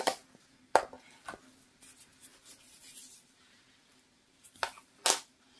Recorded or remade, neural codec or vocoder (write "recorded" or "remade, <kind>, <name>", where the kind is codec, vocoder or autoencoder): recorded